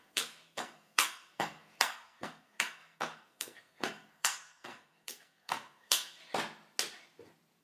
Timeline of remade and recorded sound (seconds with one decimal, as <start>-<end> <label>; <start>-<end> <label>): 0.0-6.2 remade; 6.2-7.6 recorded

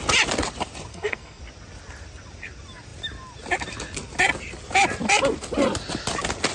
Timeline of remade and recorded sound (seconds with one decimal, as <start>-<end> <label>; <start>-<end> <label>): 0.0-0.9 recorded; 0.9-1.4 remade; 1.4-6.5 recorded

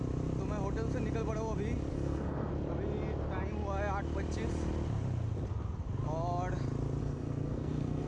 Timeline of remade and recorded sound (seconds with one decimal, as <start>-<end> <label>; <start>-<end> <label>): 0.0-1.9 recorded; 1.9-2.5 remade; 2.5-7.0 recorded; 7.0-8.1 remade

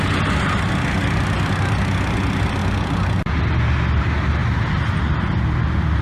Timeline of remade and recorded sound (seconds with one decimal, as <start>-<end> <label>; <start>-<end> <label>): 0.0-6.0 recorded